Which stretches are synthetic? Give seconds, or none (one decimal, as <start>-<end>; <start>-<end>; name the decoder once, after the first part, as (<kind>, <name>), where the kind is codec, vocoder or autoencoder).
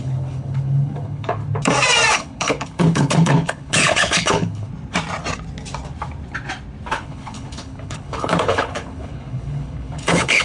0.0-1.4 (codec, HILCodec); 2.1-4.7; 6.9-10.4